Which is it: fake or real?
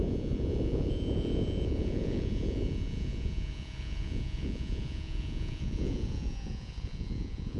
fake